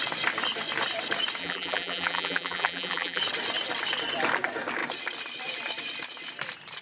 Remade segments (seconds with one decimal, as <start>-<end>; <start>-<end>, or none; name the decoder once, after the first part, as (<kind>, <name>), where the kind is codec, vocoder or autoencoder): 1.4-3.2 (vocoder, BigVGAN v2)